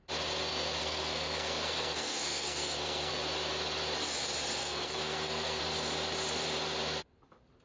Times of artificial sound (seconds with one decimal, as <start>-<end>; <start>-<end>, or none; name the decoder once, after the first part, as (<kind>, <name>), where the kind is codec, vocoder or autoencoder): 0.8-3.1 (codec, SNAC); 4.6-5.6